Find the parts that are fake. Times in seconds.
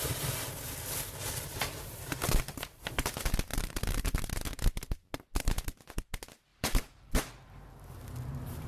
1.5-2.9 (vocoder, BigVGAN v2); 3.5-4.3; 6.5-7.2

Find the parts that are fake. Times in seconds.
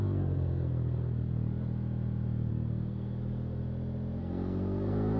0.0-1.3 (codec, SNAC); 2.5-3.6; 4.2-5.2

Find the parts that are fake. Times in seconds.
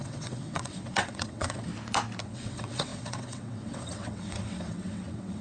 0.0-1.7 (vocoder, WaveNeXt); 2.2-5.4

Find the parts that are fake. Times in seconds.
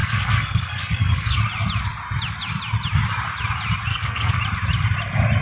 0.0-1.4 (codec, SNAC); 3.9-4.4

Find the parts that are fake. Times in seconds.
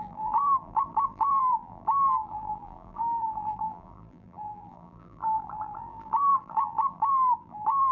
0.0-7.9 (vocoder, BigVGAN v2)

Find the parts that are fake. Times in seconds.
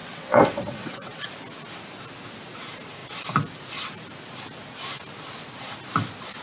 0.0-1.2 (vocoder, WaveNeXt)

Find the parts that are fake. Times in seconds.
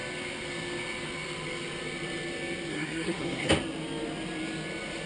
2.7-3.5 (codec, SNAC)